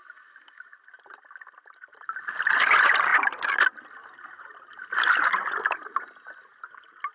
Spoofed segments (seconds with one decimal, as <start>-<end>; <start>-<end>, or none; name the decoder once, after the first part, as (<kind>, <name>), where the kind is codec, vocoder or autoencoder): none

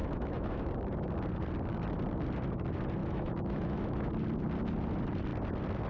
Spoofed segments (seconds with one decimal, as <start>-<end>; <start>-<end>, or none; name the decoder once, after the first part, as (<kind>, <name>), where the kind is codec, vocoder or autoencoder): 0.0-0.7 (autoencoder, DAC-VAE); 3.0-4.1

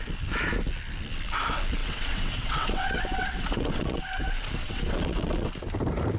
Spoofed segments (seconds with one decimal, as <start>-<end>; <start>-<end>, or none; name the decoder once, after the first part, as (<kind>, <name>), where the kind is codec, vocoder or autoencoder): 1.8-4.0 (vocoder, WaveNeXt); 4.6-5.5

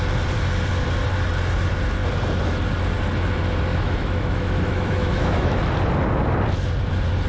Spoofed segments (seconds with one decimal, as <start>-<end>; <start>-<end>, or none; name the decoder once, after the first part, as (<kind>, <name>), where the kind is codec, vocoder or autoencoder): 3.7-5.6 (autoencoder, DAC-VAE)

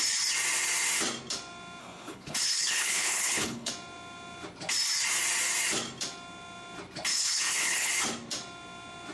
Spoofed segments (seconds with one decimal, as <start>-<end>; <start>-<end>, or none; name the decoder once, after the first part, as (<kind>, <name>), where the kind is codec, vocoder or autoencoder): 1.8-3.7 (codec, HILCodec); 7.1-7.9

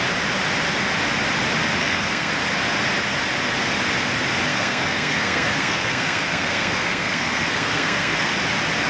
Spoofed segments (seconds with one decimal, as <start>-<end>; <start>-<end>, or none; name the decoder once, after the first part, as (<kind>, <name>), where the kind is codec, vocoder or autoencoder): 1.8-2.3 (codec, SNAC); 4.5-8.3

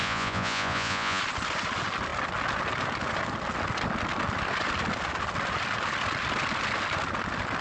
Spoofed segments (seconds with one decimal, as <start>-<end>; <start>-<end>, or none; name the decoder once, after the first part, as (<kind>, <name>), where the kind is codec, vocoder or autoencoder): 0.0-1.2 (vocoder, Vocos)